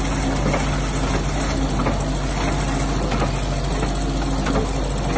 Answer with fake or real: real